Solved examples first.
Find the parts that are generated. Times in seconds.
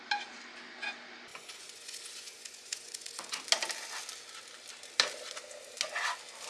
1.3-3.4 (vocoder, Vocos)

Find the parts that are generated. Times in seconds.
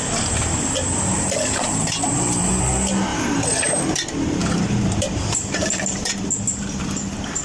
0.0-2.6 (vocoder, BigVGAN v2); 3.1-3.8; 4.4-6.1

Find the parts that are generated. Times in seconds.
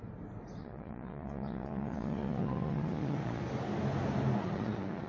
0.6-3.4 (vocoder, Vocos); 4.4-5.1